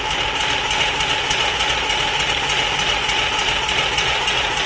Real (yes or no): yes